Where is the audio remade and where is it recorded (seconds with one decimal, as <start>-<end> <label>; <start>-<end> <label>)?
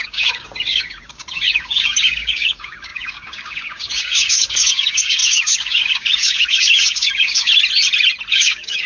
0.0-7.5 remade; 7.5-8.3 recorded; 8.3-8.9 remade